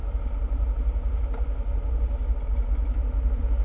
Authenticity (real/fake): real